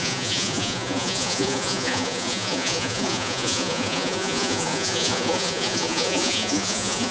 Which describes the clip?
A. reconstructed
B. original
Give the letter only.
A